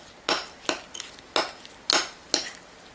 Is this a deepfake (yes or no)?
no